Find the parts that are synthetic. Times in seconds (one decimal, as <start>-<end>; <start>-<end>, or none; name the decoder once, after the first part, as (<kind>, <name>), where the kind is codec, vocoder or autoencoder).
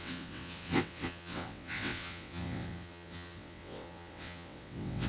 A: 0.0-5.1 (vocoder, WaveNeXt)